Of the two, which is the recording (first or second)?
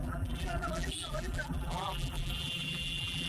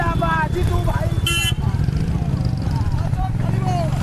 second